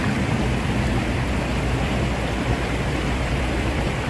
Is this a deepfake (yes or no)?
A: yes